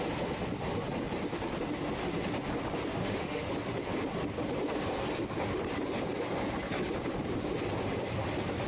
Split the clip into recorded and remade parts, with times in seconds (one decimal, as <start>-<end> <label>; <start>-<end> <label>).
0.0-3.0 recorded; 3.0-3.5 remade; 3.5-8.7 recorded